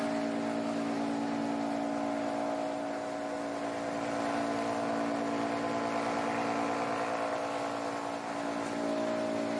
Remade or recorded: recorded